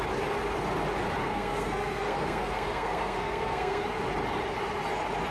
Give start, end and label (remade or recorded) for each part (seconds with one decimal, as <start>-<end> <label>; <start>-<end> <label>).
0.0-1.2 recorded; 1.2-3.8 remade; 3.8-5.3 recorded